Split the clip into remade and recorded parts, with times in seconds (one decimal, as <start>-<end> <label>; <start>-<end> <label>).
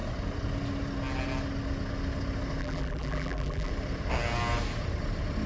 0.0-2.6 recorded; 2.6-3.7 remade; 3.7-5.5 recorded